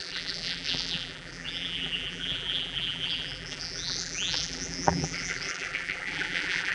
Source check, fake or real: fake